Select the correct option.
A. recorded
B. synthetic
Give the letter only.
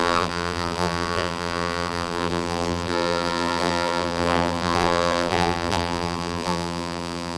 B